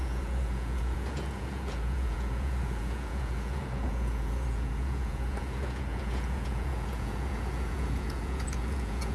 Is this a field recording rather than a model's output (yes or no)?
no